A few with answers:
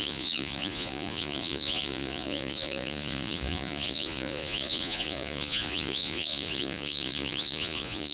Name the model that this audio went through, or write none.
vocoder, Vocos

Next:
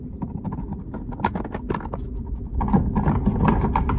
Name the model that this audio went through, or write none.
none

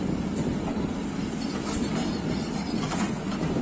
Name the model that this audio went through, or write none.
none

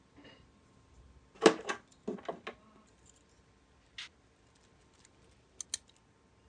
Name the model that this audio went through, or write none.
none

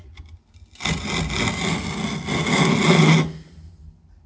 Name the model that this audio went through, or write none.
none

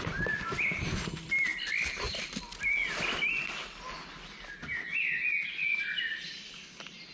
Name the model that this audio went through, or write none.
none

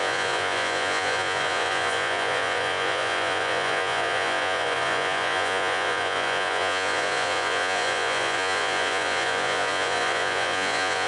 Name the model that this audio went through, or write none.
vocoder, Vocos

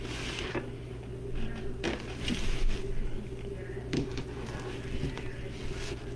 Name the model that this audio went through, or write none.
none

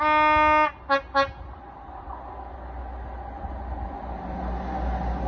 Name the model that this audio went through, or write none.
none